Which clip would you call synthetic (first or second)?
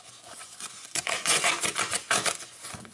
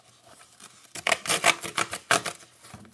first